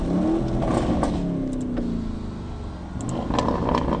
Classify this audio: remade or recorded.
recorded